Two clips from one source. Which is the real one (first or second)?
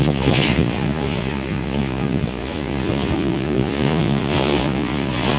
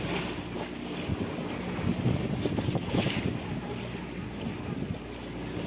second